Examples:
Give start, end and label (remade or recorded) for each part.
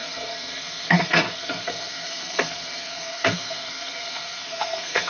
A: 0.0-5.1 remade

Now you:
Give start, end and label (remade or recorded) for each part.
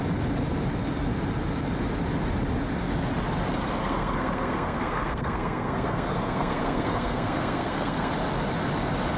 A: 0.0-3.8 recorded; 3.8-8.1 remade; 8.1-9.2 recorded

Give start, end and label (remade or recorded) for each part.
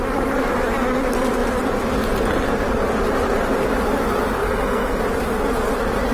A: 0.0-4.4 recorded; 4.4-5.0 remade; 5.0-6.1 recorded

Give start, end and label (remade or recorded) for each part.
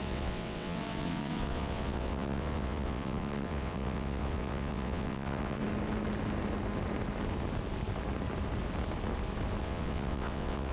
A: 0.0-5.6 remade; 5.6-9.6 recorded; 9.6-10.7 remade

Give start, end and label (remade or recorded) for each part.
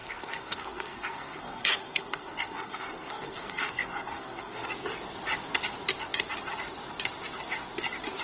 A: 0.0-4.7 remade; 4.7-8.2 recorded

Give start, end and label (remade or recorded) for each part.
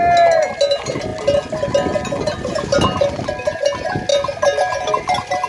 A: 0.0-5.5 recorded